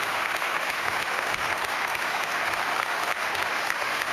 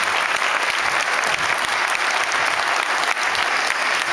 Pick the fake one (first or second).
first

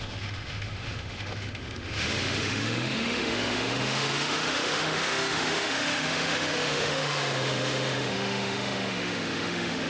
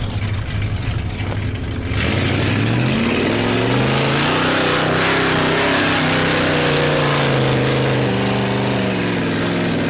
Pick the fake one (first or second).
first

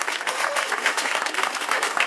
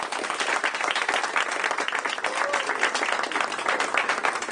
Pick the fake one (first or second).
first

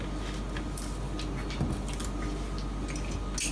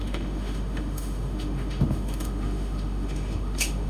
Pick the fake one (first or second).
second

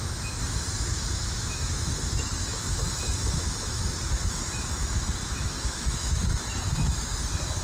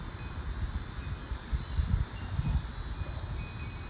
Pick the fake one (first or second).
first